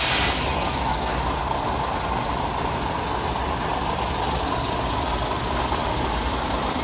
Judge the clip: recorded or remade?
recorded